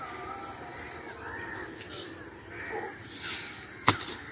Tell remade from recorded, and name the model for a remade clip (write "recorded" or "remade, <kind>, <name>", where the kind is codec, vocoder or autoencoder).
recorded